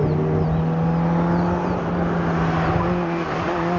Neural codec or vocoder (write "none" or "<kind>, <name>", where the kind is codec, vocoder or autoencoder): none